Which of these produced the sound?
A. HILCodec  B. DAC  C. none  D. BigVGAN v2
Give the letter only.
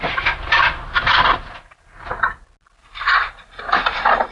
C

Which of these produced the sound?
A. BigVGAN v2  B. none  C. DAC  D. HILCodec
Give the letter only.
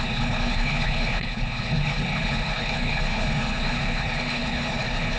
D